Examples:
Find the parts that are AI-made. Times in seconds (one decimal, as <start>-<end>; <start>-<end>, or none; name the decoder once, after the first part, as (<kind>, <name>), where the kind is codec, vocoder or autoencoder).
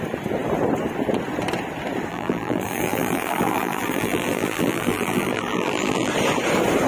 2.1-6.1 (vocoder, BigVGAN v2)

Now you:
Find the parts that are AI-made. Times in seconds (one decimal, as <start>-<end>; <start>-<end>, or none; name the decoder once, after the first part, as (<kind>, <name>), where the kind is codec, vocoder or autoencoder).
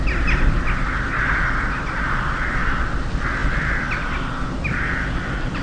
none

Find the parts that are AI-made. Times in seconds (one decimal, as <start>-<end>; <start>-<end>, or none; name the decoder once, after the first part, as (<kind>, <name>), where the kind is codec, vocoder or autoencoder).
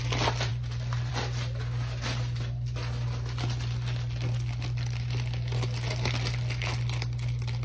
none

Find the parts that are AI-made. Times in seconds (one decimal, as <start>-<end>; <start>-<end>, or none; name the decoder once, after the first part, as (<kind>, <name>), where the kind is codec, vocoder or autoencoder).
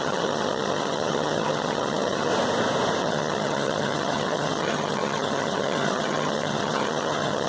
0.0-2.3 (vocoder, HiFi-GAN); 3.0-7.5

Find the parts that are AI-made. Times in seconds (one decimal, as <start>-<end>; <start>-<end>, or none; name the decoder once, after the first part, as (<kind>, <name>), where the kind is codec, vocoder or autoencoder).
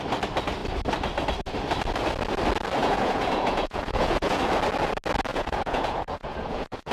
2.8-4.4 (vocoder, Vocos); 5.3-6.9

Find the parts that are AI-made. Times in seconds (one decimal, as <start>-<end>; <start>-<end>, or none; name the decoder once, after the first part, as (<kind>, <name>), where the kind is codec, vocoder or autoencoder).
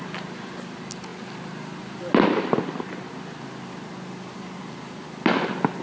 none